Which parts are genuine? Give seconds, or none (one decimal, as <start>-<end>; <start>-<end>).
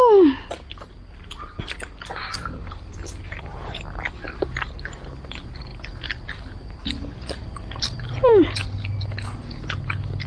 0.0-10.3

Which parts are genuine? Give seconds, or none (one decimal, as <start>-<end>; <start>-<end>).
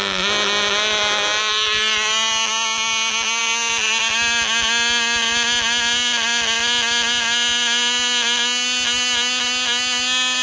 0.0-10.4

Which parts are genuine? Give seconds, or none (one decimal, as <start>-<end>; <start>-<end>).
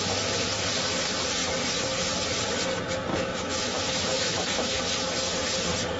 0.0-3.1; 4.8-6.0